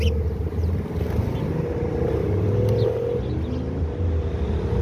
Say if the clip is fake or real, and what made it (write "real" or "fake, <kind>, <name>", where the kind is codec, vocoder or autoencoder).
real